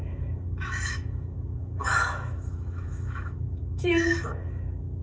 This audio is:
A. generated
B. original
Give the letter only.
A